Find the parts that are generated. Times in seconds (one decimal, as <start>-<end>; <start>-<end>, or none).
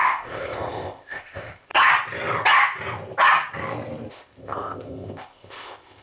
0.0-1.7; 4.1-6.0